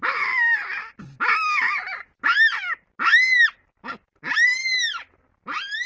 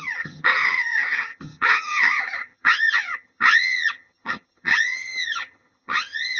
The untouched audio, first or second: first